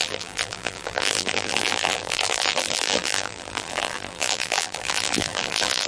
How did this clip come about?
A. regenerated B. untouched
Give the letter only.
A